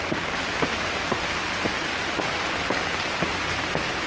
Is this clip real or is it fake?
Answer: real